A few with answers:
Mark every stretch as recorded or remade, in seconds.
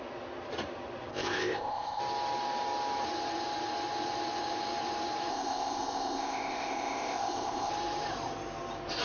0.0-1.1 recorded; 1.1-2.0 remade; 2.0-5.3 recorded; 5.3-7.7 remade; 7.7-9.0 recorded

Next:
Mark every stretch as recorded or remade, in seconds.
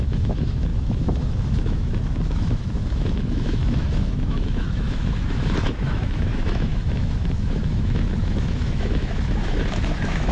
0.0-10.3 remade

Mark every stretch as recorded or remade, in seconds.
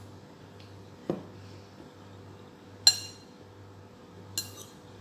0.0-5.0 recorded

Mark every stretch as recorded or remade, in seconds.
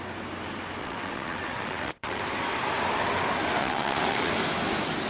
0.0-0.8 recorded; 0.8-2.2 remade; 2.2-3.6 recorded; 3.6-4.3 remade; 4.3-5.1 recorded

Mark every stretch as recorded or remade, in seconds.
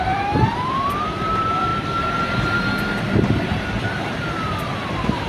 0.0-5.3 remade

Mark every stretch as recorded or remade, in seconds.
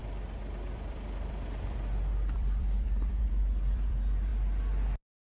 0.0-4.3 remade; 4.3-5.4 recorded